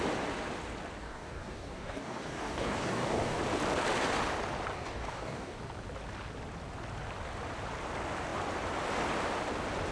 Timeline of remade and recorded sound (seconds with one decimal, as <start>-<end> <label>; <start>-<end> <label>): 0.0-1.0 recorded; 1.0-3.4 remade; 3.4-4.7 recorded; 4.7-5.6 remade; 5.6-9.9 recorded